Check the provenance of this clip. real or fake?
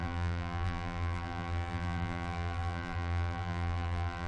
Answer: fake